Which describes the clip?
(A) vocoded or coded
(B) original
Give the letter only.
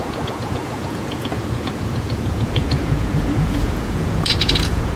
A